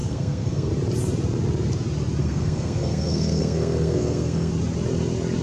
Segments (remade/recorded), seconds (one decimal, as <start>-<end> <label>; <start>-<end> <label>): 0.0-0.7 remade; 0.7-2.2 recorded; 2.2-4.5 remade; 4.5-5.4 recorded